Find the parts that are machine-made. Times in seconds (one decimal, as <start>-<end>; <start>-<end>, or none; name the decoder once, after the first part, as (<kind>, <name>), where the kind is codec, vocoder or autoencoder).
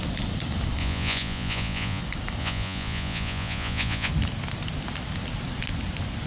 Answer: 0.8-2.0 (vocoder, Vocos); 2.4-4.1